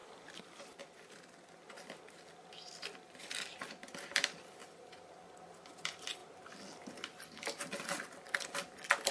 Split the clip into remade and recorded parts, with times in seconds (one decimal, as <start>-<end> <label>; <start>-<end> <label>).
0.0-6.2 remade; 6.2-7.2 recorded; 7.2-9.1 remade